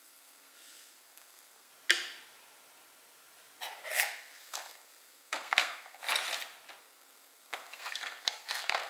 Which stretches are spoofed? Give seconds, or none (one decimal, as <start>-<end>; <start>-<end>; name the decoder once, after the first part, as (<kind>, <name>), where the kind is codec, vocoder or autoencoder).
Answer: 0.0-1.7 (codec, SNAC); 3.9-6.0; 6.8-8.9